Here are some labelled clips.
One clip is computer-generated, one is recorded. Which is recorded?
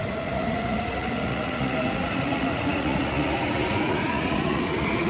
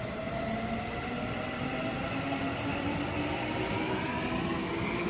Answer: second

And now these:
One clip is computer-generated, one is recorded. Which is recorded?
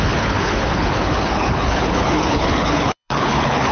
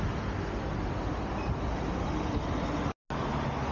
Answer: second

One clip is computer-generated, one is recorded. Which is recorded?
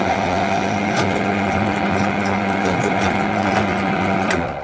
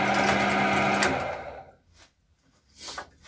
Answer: second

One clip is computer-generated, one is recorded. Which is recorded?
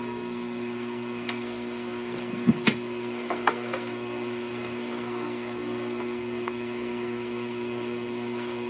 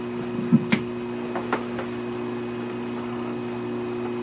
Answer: second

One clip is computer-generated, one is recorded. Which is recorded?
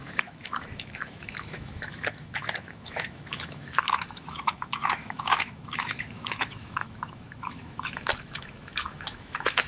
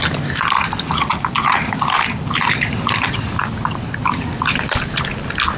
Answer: second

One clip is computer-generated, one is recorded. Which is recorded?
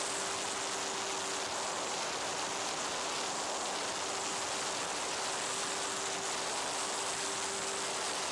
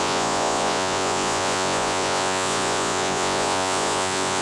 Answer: first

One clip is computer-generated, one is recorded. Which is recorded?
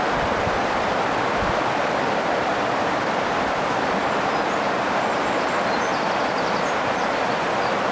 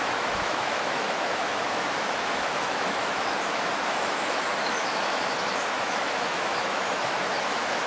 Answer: first